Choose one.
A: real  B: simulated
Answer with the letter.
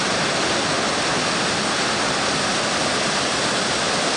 A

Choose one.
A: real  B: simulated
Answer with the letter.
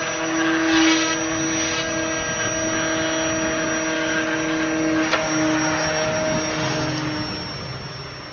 A